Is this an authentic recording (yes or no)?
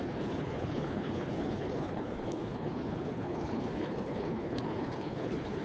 no